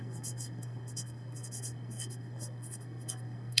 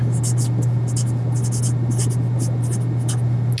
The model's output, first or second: first